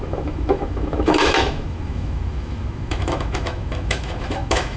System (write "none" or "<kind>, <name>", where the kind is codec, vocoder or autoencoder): autoencoder, DAC-VAE